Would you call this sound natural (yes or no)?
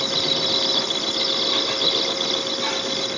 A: yes